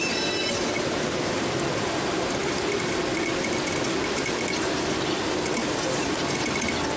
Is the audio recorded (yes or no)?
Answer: yes